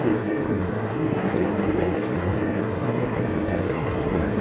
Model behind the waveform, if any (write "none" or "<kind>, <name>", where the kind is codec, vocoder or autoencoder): codec, SNAC